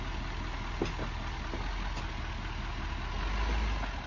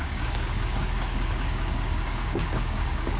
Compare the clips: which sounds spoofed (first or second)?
second